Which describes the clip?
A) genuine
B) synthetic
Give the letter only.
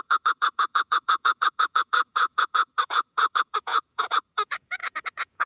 B